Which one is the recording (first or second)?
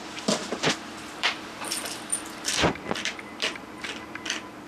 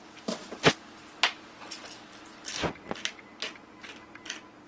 second